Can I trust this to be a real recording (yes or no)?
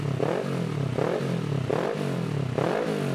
yes